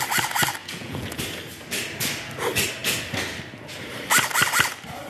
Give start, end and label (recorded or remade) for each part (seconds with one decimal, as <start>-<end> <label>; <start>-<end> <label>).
0.0-0.6 recorded; 0.6-1.2 remade; 1.2-5.1 recorded